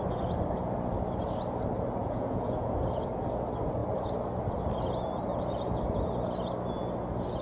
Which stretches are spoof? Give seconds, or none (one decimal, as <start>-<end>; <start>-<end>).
2.0-3.1